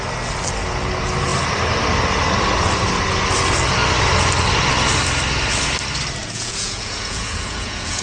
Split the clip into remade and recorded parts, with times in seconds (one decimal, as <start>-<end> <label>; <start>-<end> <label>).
0.0-6.2 recorded; 6.2-8.0 remade

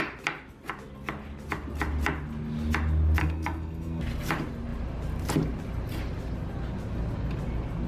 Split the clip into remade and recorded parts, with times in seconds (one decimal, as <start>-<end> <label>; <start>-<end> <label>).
0.0-3.2 recorded; 3.2-4.0 remade; 4.0-7.9 recorded

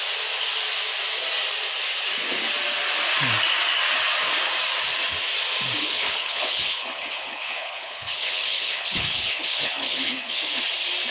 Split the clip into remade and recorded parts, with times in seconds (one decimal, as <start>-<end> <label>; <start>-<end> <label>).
0.0-5.8 recorded; 5.8-10.6 remade; 10.6-11.1 recorded

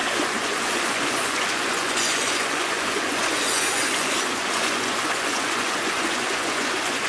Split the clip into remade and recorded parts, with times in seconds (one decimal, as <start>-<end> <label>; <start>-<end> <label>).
0.0-7.1 remade

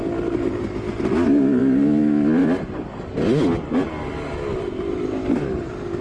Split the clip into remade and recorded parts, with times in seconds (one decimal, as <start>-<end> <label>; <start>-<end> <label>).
0.0-6.0 recorded

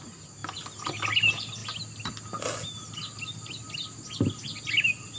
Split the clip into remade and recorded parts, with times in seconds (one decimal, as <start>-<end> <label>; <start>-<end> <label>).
0.0-5.2 recorded

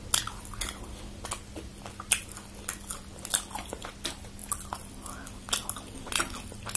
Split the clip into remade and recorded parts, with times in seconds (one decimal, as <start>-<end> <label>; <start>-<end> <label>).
0.0-6.8 recorded